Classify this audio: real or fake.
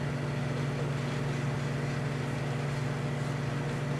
real